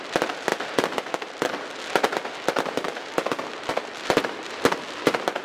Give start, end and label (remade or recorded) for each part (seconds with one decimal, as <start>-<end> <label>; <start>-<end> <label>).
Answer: 0.0-5.4 recorded